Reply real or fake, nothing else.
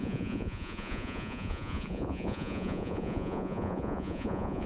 fake